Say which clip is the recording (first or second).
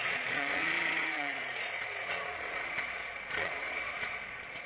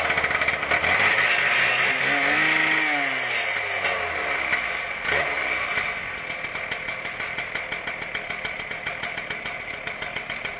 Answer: second